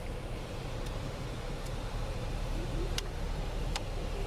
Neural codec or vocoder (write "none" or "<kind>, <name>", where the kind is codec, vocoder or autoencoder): vocoder, BigVGAN v2